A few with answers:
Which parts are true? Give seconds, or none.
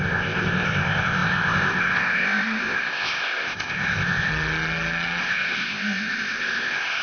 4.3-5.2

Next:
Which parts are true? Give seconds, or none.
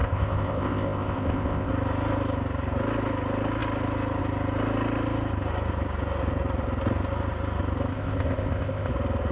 1.7-7.9; 8.9-9.3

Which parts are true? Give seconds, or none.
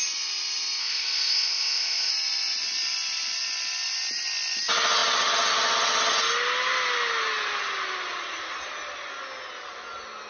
0.0-0.8; 2.1-10.3